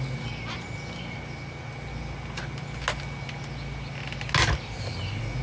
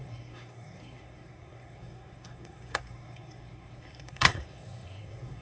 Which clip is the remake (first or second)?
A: second